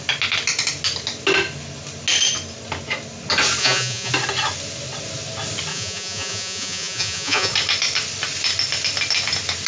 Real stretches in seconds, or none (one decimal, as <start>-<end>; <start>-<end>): 0.0-3.6; 4.1-5.7; 7.5-9.7